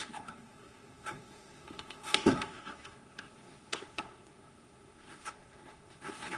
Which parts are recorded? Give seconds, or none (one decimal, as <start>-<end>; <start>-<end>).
none

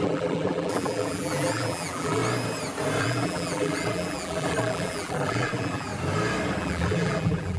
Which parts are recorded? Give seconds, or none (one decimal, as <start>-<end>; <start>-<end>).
2.2-3.0; 5.9-6.6

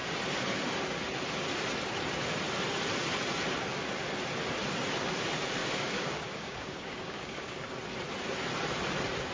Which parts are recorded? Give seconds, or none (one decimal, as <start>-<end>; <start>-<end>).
0.0-5.6; 7.7-9.3

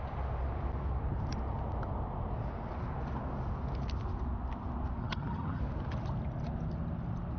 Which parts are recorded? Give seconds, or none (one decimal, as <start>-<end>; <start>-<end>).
0.0-5.0; 5.6-7.4

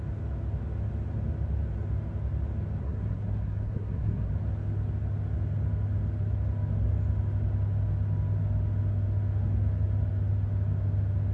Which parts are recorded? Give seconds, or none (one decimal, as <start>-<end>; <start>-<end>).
0.0-2.8; 4.3-11.3

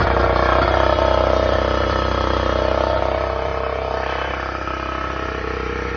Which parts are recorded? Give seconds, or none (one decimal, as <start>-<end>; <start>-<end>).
0.0-6.0